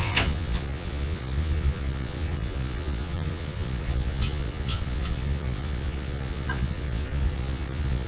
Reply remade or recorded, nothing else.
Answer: remade